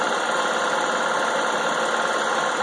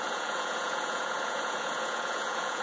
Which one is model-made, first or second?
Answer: second